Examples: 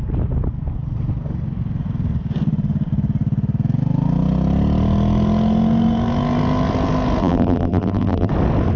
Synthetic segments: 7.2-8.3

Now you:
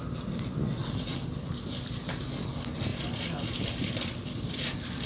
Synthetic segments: 0.8-2.2; 2.9-5.1

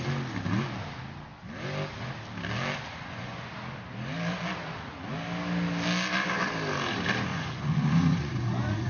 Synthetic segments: 2.9-3.5; 7.3-8.9

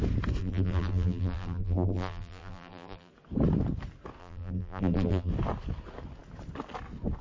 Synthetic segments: 0.4-3.1; 4.2-5.3

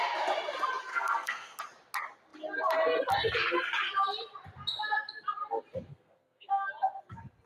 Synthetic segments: 0.9-1.6; 5.9-6.7